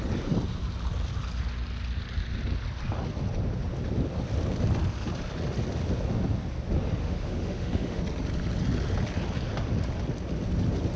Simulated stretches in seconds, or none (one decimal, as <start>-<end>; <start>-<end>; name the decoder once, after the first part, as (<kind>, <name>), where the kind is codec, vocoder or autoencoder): 7.0-8.0 (autoencoder, DAC-VAE)